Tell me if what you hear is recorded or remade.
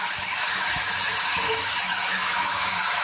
remade